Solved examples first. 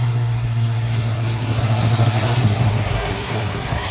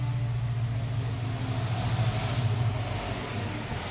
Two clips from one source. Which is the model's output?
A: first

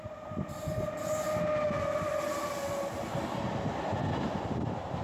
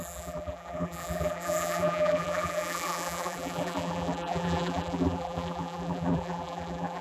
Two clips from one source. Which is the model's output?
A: second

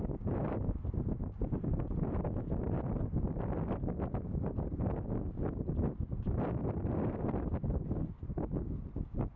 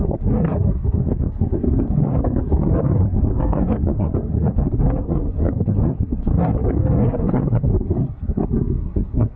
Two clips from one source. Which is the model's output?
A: second